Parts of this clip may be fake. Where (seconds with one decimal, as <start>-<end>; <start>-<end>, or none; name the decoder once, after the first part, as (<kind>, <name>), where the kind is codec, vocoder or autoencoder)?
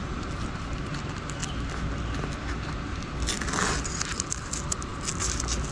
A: none